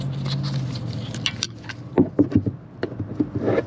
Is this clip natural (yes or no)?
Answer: yes